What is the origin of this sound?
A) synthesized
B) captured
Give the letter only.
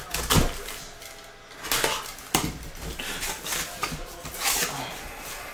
B